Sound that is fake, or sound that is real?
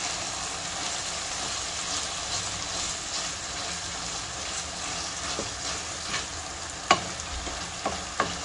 real